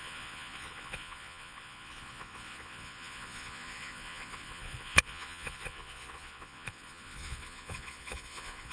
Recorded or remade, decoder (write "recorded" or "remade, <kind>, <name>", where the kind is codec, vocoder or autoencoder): remade, vocoder, Vocos